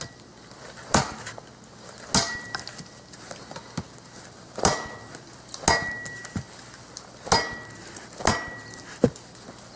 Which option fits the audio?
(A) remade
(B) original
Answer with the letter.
B